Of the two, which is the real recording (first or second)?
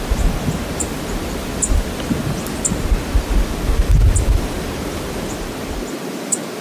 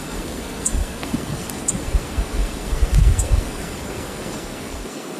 first